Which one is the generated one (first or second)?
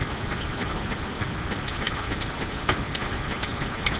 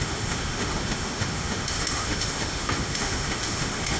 second